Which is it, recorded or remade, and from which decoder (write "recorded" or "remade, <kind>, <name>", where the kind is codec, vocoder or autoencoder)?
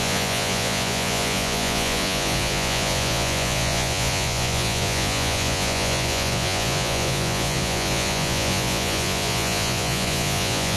remade, vocoder, Vocos